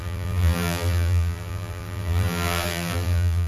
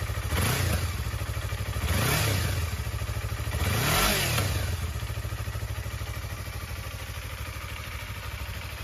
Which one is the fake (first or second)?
first